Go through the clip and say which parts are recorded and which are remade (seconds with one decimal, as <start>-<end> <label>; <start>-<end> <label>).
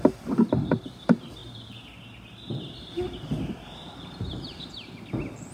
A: 0.0-5.5 recorded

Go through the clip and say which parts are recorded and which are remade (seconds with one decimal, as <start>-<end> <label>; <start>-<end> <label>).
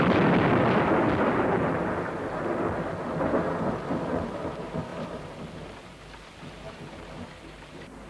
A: 0.0-4.9 recorded; 4.9-5.4 remade; 5.4-8.1 recorded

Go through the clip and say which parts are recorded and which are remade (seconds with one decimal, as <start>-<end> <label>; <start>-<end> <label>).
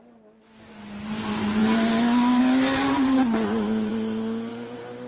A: 0.0-5.1 recorded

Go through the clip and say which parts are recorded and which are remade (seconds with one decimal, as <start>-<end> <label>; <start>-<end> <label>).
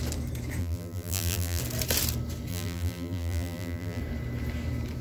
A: 0.0-0.6 recorded; 0.6-1.6 remade; 1.6-2.5 recorded; 2.5-4.0 remade; 4.0-5.0 recorded